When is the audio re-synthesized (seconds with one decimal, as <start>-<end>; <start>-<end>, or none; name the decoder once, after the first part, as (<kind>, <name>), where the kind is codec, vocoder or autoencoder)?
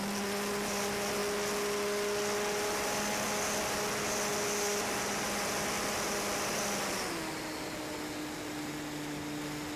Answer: none